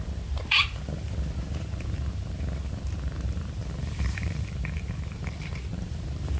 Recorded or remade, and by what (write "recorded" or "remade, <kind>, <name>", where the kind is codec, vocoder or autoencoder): remade, vocoder, BigVGAN v2